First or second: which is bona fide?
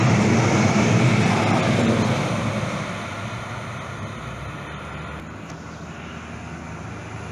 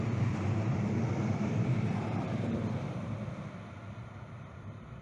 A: first